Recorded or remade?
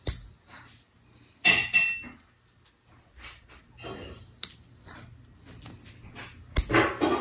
recorded